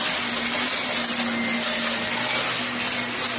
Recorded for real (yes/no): yes